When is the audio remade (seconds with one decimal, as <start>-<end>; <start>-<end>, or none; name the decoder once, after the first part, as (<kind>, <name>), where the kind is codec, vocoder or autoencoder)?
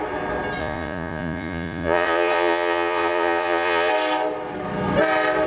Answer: 0.6-3.9 (vocoder, Vocos)